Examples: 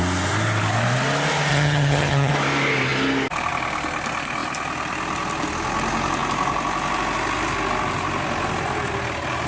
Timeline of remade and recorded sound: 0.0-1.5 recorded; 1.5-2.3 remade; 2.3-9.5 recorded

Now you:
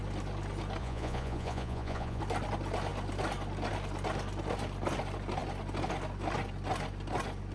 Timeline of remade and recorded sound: 0.0-0.8 recorded; 0.8-2.2 remade; 2.2-7.5 recorded

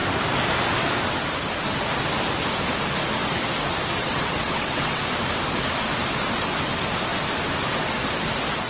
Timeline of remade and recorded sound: 0.0-4.0 recorded; 4.0-5.0 remade; 5.0-8.7 recorded